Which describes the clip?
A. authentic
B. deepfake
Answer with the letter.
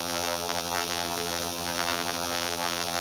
B